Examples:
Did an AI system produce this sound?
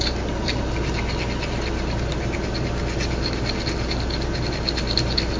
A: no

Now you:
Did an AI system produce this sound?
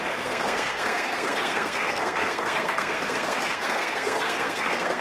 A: yes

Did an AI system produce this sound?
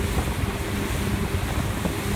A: no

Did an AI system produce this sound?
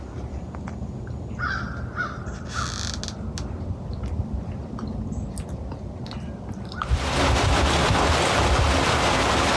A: no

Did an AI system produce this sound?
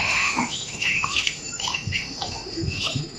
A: yes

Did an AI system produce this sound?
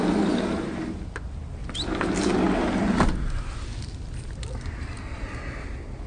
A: no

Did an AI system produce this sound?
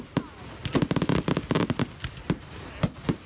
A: no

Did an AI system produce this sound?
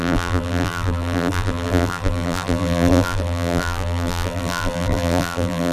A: yes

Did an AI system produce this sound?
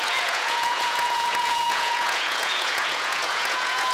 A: yes